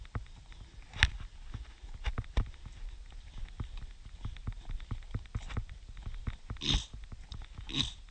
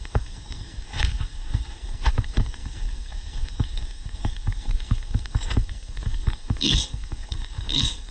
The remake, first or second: second